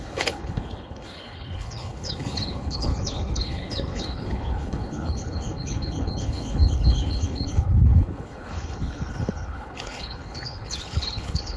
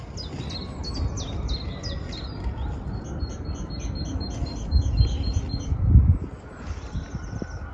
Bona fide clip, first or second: second